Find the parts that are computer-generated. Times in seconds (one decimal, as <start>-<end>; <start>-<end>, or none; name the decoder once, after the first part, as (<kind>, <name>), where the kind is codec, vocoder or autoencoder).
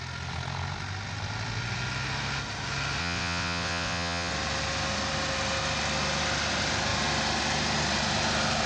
3.0-4.3 (vocoder, WaveNeXt)